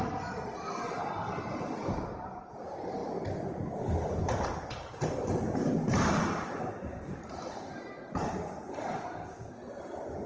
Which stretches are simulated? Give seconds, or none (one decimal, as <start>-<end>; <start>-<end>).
none